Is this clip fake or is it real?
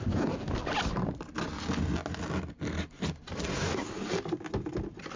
real